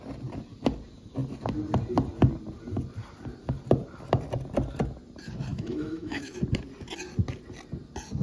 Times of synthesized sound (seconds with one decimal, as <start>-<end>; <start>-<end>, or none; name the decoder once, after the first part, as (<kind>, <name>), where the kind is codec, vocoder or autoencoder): 5.5-6.4 (autoencoder, DAC-VAE)